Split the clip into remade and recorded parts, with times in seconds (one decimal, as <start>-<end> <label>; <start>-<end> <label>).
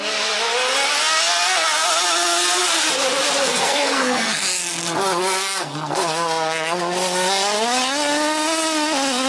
0.0-3.4 recorded; 3.4-6.8 remade; 6.8-9.3 recorded